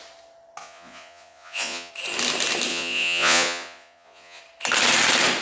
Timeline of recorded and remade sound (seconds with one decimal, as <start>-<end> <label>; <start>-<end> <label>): 0.0-0.6 recorded; 0.6-1.9 remade; 1.9-2.7 recorded; 2.7-4.4 remade; 4.4-5.4 recorded